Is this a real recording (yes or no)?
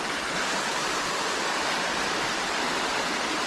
yes